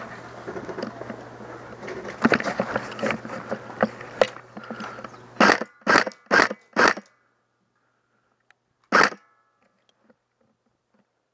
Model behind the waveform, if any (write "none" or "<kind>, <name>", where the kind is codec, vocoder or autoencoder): none